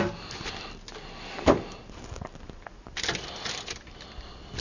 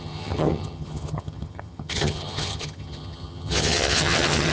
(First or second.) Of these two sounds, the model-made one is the second